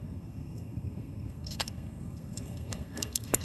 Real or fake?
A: fake